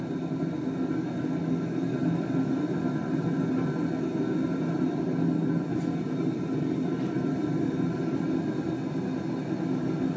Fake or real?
real